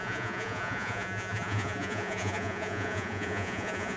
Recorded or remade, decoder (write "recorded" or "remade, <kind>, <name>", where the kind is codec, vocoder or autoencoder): remade, vocoder, Vocos